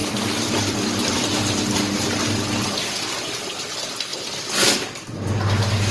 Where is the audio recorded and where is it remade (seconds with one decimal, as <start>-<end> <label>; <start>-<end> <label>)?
0.0-2.2 remade; 2.2-5.9 recorded